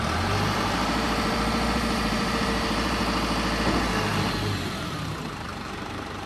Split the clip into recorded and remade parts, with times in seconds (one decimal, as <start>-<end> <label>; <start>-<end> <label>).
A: 0.0-3.0 remade; 3.0-4.1 recorded; 4.1-6.3 remade